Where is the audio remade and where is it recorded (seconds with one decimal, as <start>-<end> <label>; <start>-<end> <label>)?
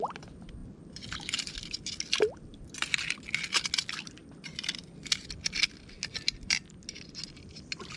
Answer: 0.0-8.0 recorded